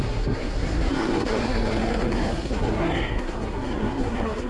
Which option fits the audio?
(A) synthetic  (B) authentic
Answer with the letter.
A